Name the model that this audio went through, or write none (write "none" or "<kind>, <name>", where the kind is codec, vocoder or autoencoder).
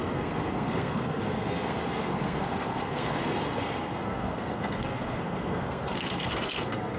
codec, SNAC